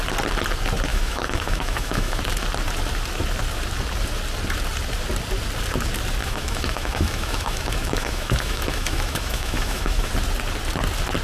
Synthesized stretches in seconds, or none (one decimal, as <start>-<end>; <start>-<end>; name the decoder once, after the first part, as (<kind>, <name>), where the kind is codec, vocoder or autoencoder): 0.9-2.2 (autoencoder, DAC-VAE); 6.2-10.1